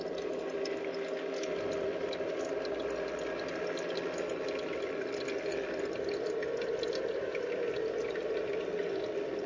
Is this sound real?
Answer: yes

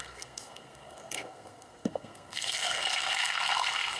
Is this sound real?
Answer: no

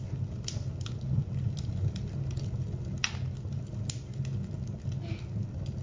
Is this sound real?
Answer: yes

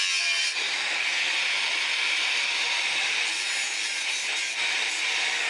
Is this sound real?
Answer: yes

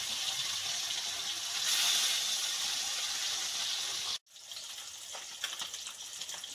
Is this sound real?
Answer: yes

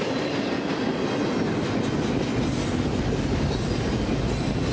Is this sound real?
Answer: yes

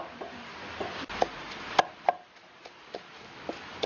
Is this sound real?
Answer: yes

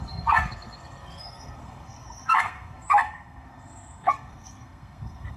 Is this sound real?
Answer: no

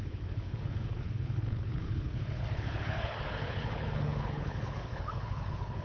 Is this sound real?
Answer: no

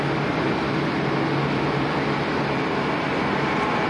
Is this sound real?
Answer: yes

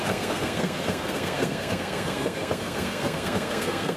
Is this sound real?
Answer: no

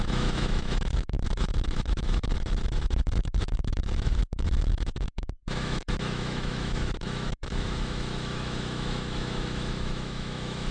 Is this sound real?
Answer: no